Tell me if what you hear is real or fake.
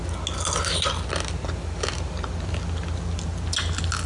real